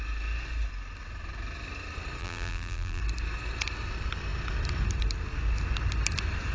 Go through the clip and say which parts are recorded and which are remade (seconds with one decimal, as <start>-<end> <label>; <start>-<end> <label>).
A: 0.0-2.2 recorded; 2.2-3.0 remade; 3.0-6.5 recorded

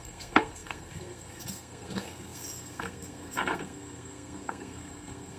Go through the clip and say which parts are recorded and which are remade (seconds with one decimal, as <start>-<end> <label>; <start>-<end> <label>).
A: 0.0-5.4 remade

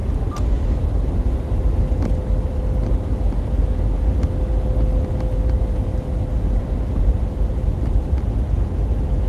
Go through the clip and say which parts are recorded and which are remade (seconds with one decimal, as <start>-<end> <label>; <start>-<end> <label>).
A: 0.0-1.8 remade; 1.8-5.9 recorded; 5.9-8.2 remade; 8.2-9.3 recorded

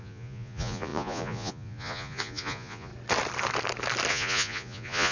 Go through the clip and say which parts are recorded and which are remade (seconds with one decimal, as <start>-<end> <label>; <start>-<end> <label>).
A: 0.0-2.9 remade; 2.9-4.1 recorded; 4.1-5.1 remade

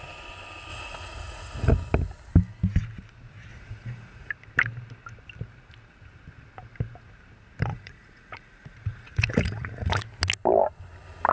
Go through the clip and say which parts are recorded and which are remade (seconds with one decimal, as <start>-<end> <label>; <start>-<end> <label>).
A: 0.0-0.7 recorded; 0.7-1.7 remade; 1.7-3.5 recorded; 3.5-4.3 remade; 4.3-7.7 recorded; 7.7-10.0 remade; 10.0-11.3 recorded

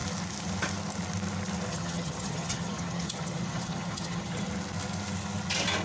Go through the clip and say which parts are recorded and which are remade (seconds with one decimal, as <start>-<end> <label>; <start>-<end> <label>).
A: 0.0-1.7 recorded; 1.7-4.5 remade; 4.5-5.8 recorded